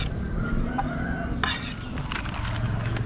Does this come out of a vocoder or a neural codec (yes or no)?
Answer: no